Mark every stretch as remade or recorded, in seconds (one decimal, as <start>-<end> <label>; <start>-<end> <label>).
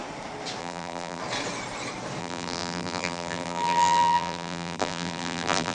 0.0-0.6 recorded; 0.6-1.2 remade; 1.2-2.2 recorded; 2.2-5.7 remade